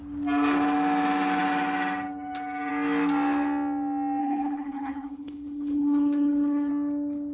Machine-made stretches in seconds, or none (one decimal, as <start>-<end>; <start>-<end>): 4.2-6.7